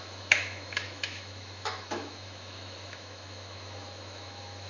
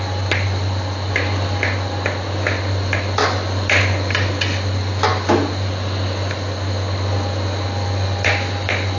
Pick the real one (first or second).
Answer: second